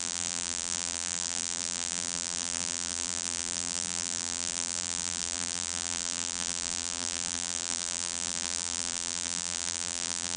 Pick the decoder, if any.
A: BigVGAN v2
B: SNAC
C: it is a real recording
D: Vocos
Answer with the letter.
A